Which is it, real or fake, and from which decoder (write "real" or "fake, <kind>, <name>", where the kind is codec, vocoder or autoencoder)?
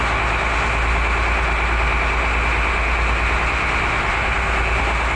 real